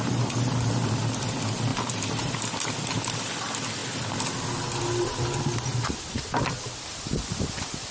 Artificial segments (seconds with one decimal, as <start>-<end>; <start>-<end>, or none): 1.7-2.3